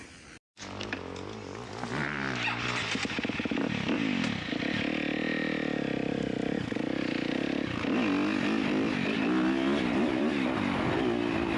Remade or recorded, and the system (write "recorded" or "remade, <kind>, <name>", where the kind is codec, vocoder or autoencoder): recorded